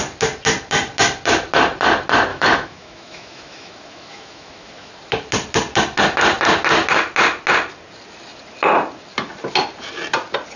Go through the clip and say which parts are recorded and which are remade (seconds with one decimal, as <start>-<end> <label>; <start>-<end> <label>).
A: 0.0-2.3 recorded; 2.3-4.9 remade; 4.9-10.6 recorded